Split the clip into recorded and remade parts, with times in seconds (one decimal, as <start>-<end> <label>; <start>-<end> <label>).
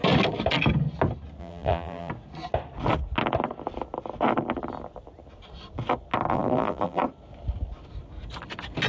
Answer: 0.0-1.4 recorded; 1.4-2.1 remade; 2.1-6.3 recorded; 6.3-7.0 remade; 7.0-8.9 recorded